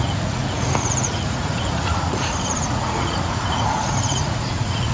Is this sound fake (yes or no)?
yes